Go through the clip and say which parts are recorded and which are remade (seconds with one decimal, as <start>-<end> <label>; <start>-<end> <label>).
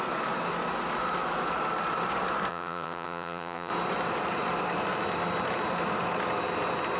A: 0.0-2.5 recorded; 2.5-3.7 remade; 3.7-7.0 recorded